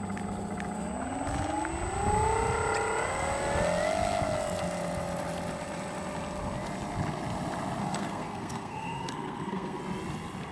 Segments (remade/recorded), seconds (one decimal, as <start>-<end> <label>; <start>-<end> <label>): 0.0-7.8 recorded; 7.8-9.8 remade; 9.8-10.5 recorded